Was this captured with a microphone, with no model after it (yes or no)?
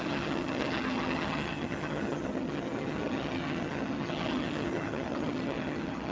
no